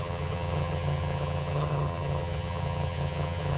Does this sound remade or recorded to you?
remade